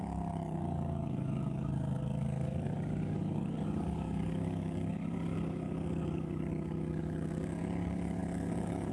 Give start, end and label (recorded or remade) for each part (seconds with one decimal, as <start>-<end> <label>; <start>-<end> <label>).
0.0-8.9 remade